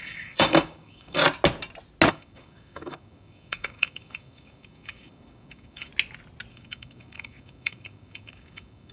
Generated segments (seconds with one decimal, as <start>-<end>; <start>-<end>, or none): 0.0-1.2; 2.1-5.9; 6.5-8.9